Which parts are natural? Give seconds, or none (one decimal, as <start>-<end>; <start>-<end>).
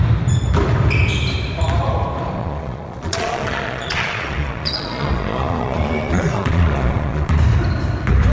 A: 0.0-2.4; 7.4-8.3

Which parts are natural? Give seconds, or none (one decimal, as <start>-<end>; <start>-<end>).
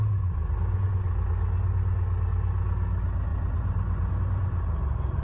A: 0.0-3.3; 4.1-5.2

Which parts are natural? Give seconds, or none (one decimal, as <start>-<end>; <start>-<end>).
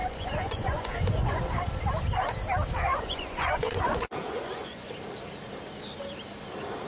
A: 1.4-2.9; 4.9-6.9